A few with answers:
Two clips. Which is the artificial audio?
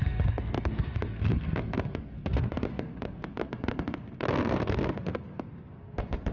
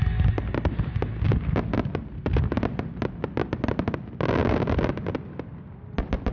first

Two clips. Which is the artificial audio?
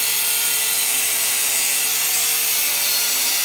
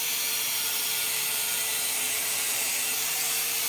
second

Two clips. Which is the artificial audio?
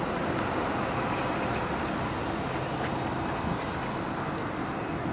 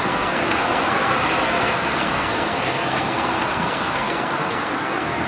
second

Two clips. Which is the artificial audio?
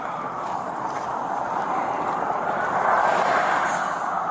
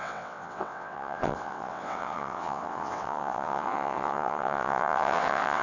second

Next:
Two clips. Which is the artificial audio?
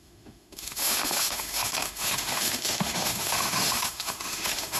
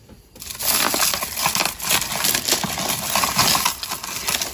first